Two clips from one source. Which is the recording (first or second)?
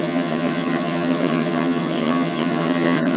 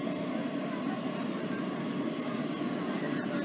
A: second